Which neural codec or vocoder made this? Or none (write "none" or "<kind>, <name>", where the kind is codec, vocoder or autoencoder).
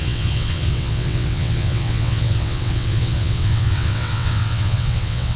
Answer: vocoder, WaveNeXt